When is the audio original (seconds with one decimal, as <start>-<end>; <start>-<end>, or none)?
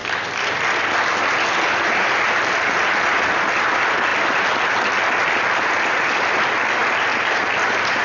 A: 0.0-8.0